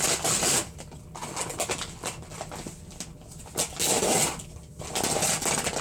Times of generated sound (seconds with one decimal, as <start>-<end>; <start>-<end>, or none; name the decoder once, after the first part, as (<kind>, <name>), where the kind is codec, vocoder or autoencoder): none